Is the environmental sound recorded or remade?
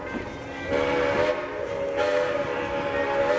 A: recorded